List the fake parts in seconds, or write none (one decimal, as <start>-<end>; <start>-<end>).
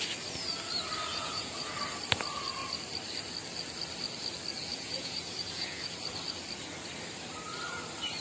1.1-1.7; 4.7-5.9